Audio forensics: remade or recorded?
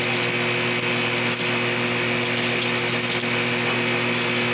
recorded